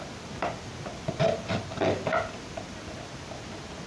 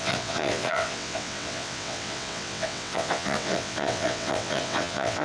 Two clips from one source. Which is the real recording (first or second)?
first